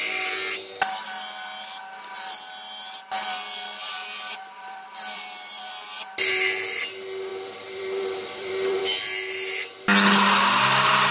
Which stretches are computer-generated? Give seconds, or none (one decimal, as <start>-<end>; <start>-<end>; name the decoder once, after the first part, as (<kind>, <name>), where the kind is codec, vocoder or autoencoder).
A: 3.8-5.7 (vocoder, BigVGAN v2); 7.3-8.8